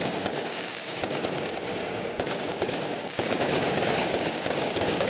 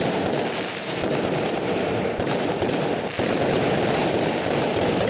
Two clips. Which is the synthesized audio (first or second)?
first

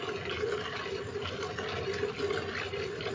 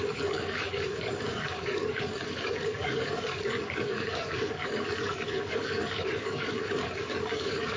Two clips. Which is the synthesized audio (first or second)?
second